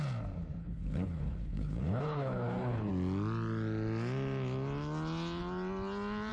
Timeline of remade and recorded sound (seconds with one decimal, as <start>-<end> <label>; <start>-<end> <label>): 0.0-0.6 recorded; 0.6-2.9 remade; 2.9-6.3 recorded